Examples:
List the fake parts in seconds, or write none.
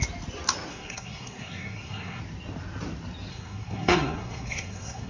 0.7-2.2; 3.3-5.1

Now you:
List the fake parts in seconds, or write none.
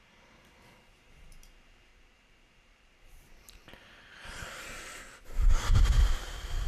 1.9-5.9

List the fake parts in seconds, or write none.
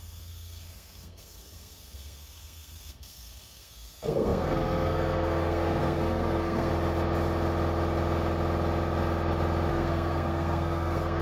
0.0-6.7; 9.7-11.2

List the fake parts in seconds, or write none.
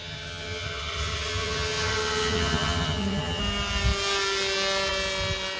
0.0-3.4